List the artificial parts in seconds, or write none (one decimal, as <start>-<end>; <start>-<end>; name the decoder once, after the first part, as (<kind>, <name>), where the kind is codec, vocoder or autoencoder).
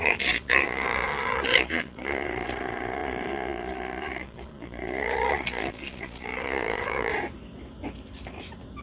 0.0-7.1 (vocoder, Vocos)